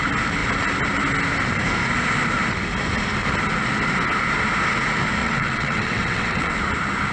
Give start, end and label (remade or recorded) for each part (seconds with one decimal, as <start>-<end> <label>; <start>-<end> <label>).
0.0-5.2 recorded; 5.2-6.6 remade; 6.6-7.1 recorded